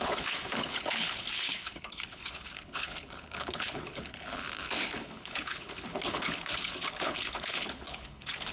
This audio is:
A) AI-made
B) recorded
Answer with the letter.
A